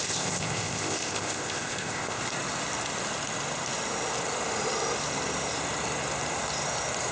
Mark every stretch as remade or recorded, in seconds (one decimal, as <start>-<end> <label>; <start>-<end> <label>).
0.0-2.2 remade; 2.2-7.1 recorded

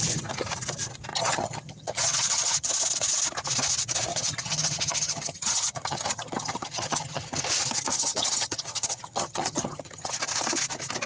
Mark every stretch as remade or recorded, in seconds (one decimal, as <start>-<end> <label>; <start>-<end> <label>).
0.0-1.1 recorded; 1.1-2.7 remade; 2.7-4.1 recorded; 4.1-7.4 remade; 7.4-7.9 recorded; 7.9-10.1 remade; 10.1-11.1 recorded

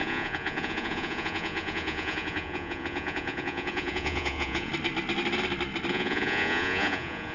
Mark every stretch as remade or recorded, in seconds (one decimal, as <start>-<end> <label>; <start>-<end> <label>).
0.0-4.7 remade; 4.7-5.9 recorded; 5.9-7.3 remade

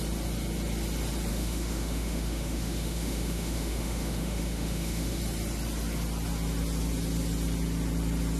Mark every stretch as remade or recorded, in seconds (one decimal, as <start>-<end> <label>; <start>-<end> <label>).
0.0-1.3 recorded; 1.3-5.2 remade; 5.2-8.4 recorded

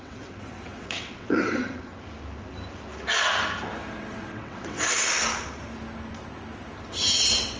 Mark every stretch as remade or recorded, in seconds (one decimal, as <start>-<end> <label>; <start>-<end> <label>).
0.0-1.9 remade; 1.9-3.9 recorded; 3.9-5.3 remade; 5.3-6.9 recorded; 6.9-7.6 remade